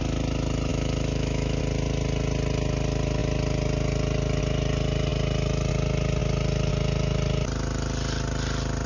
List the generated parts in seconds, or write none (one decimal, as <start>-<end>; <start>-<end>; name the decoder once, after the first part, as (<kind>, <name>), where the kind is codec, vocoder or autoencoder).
0.7-1.6 (autoencoder, DAC-VAE)